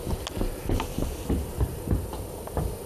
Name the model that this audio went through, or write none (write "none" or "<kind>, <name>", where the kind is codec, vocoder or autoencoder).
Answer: none